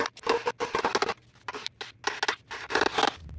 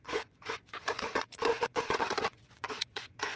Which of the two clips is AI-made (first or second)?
second